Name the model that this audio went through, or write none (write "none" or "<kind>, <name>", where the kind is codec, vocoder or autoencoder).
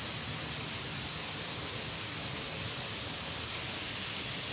none